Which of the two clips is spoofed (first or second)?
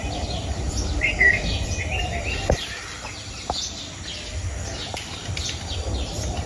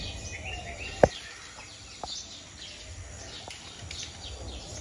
first